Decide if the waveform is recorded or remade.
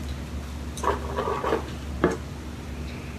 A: recorded